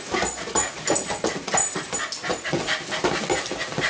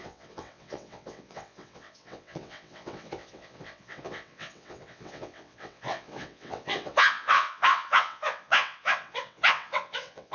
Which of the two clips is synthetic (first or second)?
second